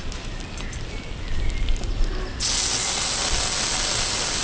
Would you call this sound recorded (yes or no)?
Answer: yes